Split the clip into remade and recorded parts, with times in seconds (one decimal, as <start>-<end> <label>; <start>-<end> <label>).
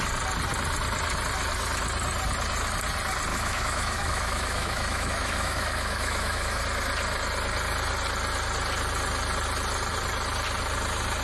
0.0-3.3 recorded; 3.3-6.6 remade; 6.6-11.2 recorded